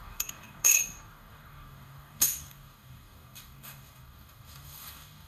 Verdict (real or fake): fake